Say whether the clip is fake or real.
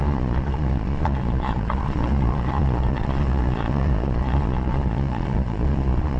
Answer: fake